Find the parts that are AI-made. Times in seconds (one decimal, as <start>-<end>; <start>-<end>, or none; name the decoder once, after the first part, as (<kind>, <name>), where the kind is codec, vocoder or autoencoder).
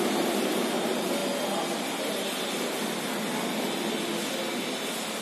none